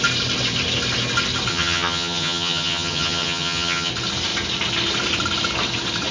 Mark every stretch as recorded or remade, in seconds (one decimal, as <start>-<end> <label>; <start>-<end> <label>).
0.0-1.5 recorded; 1.5-3.9 remade; 3.9-6.1 recorded